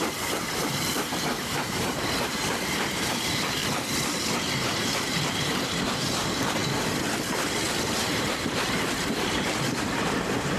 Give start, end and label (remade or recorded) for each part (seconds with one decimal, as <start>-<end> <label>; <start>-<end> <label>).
0.0-3.6 remade; 3.6-4.6 recorded; 4.6-6.6 remade; 6.6-7.9 recorded; 7.9-10.6 remade